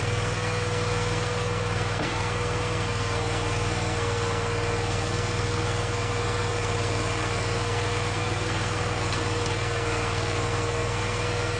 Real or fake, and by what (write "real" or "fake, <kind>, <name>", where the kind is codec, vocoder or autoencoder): fake, codec, SNAC